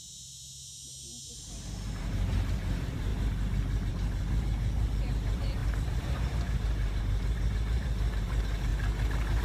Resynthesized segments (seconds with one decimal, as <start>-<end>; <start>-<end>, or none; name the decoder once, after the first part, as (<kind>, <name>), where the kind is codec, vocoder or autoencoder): 1.3-3.1 (vocoder, BigVGAN v2); 3.9-8.7